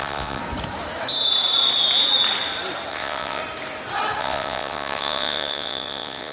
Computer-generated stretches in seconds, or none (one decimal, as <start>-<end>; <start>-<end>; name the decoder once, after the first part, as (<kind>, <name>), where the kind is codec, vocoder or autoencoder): 0.0-0.4 (vocoder, WaveNeXt); 2.9-3.4; 4.2-6.3